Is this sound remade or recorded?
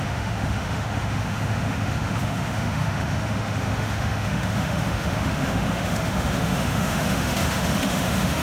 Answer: remade